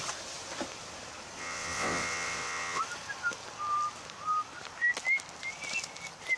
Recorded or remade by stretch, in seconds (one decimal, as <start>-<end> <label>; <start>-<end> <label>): 0.0-1.4 recorded; 1.4-2.8 remade; 2.8-6.4 recorded